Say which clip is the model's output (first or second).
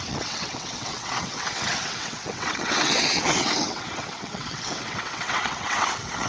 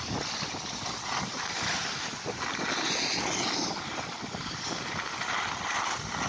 first